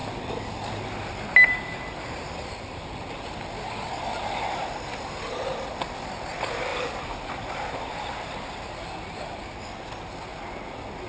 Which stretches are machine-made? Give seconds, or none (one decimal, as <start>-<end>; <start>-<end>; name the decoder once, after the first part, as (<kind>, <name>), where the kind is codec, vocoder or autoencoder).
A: 5.5-6.3 (vocoder, BigVGAN v2); 6.7-9.5